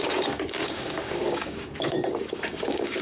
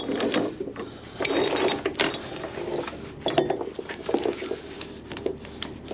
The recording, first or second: second